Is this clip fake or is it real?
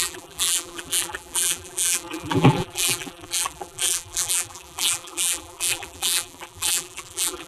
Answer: fake